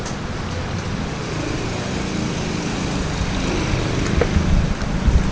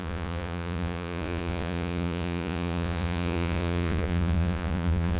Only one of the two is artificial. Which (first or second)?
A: second